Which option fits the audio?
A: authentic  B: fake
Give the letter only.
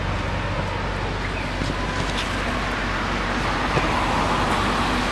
A